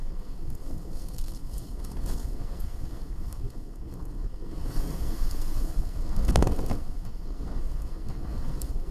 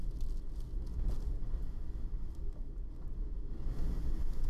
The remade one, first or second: first